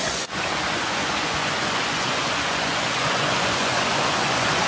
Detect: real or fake fake